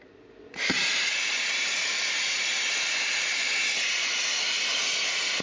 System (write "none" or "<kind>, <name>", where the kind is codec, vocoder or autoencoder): none